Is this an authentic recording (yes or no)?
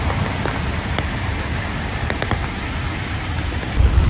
yes